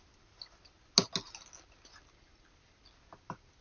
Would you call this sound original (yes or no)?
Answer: yes